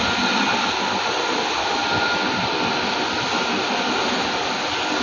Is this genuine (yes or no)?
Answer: yes